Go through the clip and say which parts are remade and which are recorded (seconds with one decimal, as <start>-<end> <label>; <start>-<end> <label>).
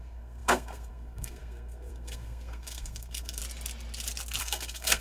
0.0-3.4 remade; 3.4-4.4 recorded; 4.4-5.0 remade